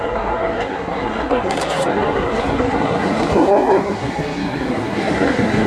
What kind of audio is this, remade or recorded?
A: remade